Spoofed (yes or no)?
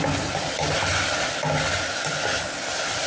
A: no